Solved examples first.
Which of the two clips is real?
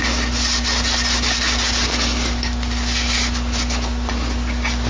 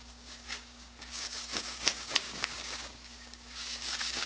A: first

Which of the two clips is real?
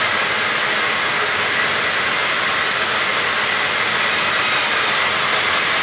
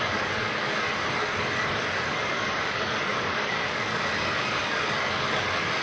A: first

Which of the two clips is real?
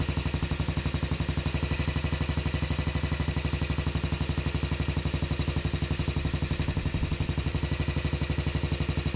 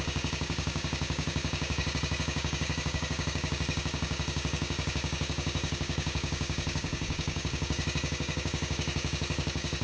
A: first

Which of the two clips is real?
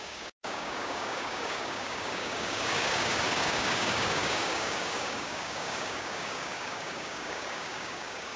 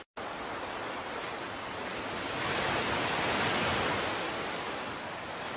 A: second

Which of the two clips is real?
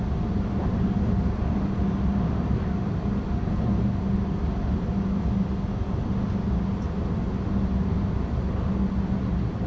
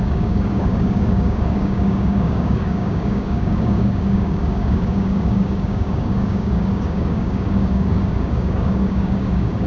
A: first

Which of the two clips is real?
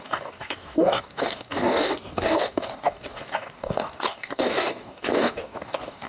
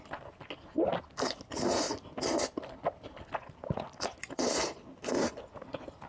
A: second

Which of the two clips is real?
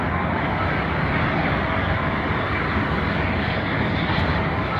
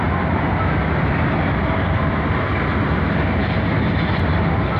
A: second